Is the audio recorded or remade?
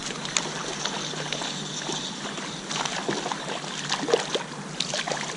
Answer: recorded